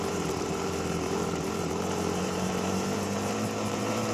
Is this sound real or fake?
fake